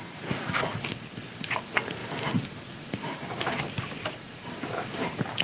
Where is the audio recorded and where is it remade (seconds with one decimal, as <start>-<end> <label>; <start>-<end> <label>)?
0.0-5.4 remade